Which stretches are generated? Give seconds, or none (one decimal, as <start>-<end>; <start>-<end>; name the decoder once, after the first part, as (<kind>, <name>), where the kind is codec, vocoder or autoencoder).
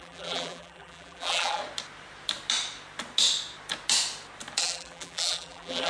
0.0-1.6 (vocoder, BigVGAN v2); 4.6-5.9